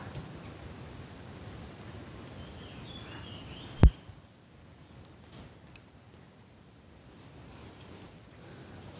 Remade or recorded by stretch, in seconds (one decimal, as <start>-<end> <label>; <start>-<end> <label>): 0.0-9.0 recorded